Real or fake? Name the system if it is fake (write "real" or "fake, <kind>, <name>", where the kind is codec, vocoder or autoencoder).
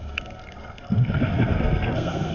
fake, codec, SNAC